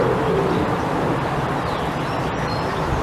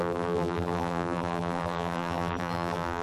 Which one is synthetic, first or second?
second